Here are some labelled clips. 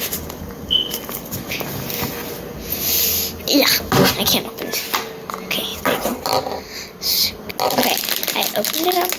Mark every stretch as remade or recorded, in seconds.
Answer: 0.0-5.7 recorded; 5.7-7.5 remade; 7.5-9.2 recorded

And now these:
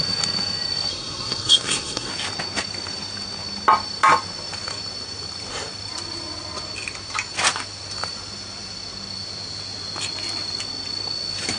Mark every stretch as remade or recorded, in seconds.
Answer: 0.0-0.9 recorded; 0.9-2.1 remade; 2.1-11.6 recorded

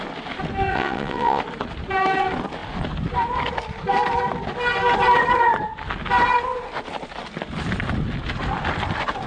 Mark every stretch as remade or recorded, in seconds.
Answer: 0.0-0.7 recorded; 0.7-1.4 remade; 1.4-9.3 recorded